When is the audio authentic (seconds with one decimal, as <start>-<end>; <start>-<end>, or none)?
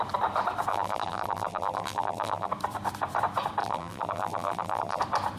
0.0-0.7; 2.5-3.6; 5.0-5.4